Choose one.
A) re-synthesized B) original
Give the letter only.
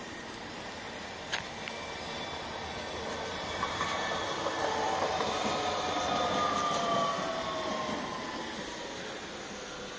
B